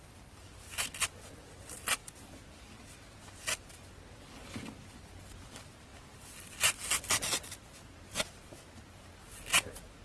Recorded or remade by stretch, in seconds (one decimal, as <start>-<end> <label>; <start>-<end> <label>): 0.0-10.0 recorded